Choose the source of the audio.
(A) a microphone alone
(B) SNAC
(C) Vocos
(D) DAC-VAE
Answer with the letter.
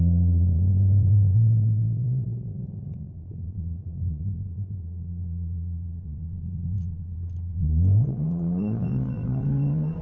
C